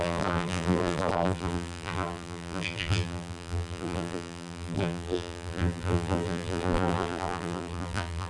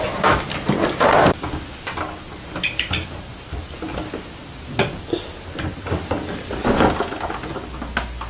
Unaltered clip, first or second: second